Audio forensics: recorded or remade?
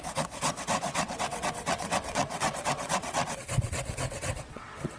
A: remade